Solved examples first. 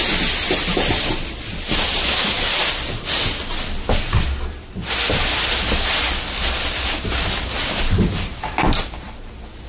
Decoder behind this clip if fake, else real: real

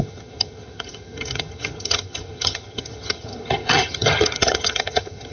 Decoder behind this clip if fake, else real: fake, vocoder, HiFi-GAN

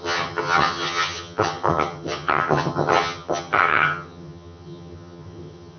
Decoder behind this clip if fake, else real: fake, vocoder, HiFi-GAN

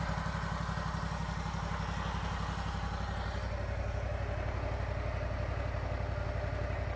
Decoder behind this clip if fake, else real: real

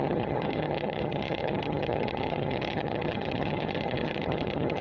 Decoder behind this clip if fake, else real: fake, vocoder, HiFi-GAN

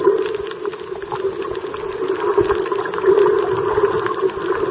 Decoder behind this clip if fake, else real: real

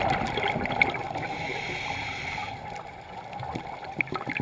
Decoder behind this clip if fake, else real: real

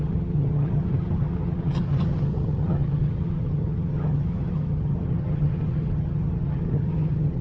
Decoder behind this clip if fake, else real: fake, vocoder, HiFi-GAN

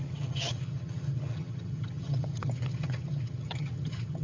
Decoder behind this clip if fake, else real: fake, vocoder, HiFi-GAN